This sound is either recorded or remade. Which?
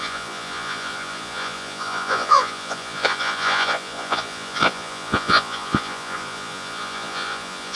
remade